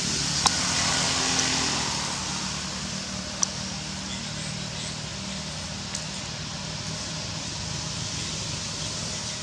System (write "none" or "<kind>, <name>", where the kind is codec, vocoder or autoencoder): none